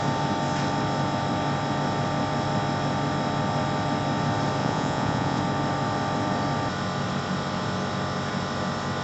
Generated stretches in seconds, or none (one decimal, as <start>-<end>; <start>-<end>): 4.6-5.4